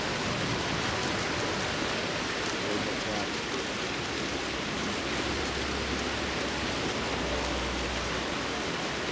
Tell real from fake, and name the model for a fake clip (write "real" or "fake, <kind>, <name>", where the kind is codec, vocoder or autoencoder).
real